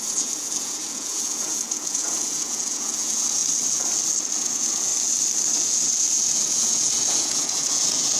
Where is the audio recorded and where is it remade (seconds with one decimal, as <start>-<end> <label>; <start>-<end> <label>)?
0.0-3.4 remade; 3.4-4.2 recorded; 4.2-4.9 remade; 4.9-5.6 recorded; 5.6-8.2 remade